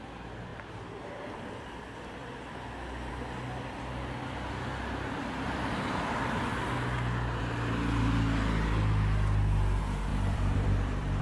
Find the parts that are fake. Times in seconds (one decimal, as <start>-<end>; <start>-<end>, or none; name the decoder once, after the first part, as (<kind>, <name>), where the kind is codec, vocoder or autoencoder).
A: 0.5-3.1 (vocoder, BigVGAN v2); 10.1-11.2